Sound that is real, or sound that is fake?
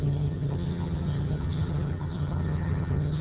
fake